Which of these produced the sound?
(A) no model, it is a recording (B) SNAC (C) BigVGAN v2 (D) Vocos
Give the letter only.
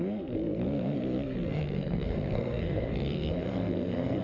B